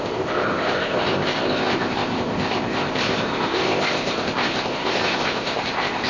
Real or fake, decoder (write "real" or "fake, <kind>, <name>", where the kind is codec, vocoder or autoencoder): fake, codec, ZipCodec